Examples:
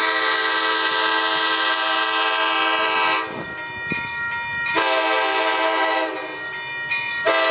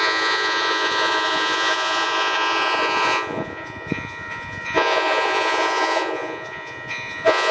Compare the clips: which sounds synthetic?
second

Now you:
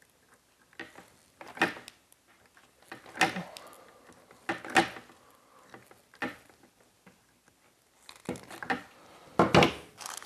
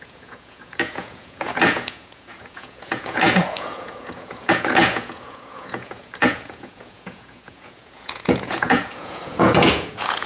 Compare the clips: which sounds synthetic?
second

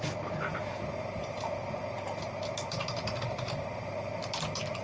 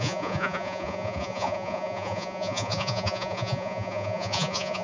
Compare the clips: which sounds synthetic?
second